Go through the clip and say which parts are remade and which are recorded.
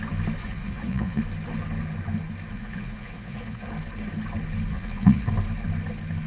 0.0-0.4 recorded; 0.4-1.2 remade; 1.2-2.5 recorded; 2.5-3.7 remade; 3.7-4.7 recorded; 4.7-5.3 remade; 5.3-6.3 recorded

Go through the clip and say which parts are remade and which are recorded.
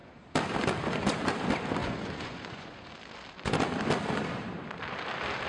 0.0-1.8 recorded; 1.8-2.9 remade; 2.9-5.5 recorded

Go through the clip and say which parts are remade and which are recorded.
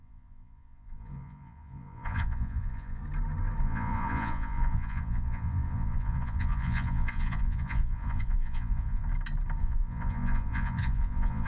0.0-3.0 remade; 3.0-3.6 recorded; 3.6-9.0 remade; 9.0-9.6 recorded; 9.6-11.5 remade